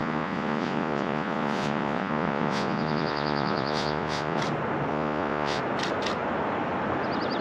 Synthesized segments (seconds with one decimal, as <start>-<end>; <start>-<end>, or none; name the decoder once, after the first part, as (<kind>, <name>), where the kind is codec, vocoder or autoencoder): 0.0-4.4 (vocoder, Vocos); 4.9-5.6